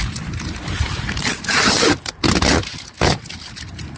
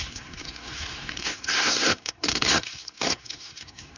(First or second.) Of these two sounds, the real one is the first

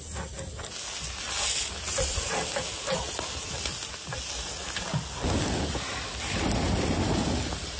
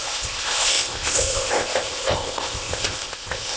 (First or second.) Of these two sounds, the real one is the first